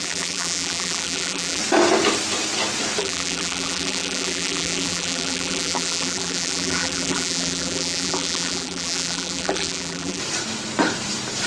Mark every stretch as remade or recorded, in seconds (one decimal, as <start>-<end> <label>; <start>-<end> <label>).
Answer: 0.0-1.6 remade; 1.6-3.0 recorded; 3.0-10.2 remade; 10.2-11.5 recorded